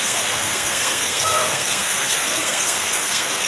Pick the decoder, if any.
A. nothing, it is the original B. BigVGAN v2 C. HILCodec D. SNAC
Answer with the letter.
D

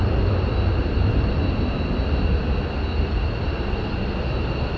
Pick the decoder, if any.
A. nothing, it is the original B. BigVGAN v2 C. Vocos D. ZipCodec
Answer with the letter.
A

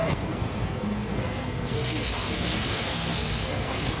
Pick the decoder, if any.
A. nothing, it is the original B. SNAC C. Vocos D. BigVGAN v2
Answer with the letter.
B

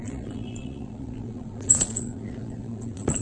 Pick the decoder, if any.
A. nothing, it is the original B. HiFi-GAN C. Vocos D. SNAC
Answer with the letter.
C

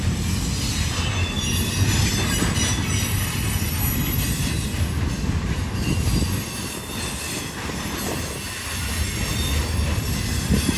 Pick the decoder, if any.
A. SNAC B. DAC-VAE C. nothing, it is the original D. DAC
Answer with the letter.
C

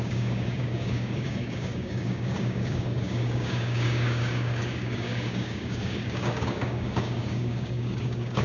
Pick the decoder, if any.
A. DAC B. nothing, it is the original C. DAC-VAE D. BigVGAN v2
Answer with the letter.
A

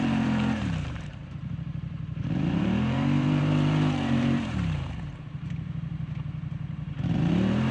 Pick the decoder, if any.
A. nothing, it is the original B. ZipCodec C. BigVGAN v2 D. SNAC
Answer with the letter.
C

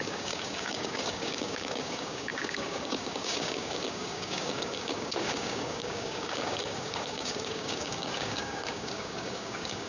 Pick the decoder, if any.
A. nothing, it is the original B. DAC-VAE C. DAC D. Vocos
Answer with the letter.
C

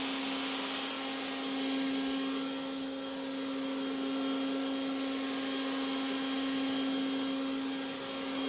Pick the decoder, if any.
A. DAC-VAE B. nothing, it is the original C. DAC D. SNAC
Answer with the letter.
B